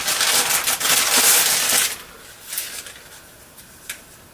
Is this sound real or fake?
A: real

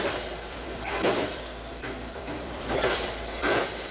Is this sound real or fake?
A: fake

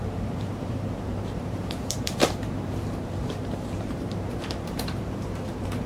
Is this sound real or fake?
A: fake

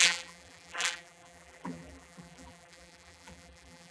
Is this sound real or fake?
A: fake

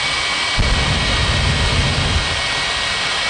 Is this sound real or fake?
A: fake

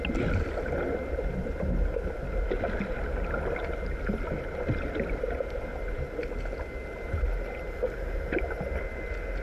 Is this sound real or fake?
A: real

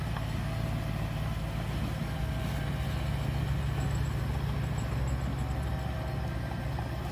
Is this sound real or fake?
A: real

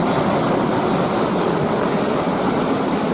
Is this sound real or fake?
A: real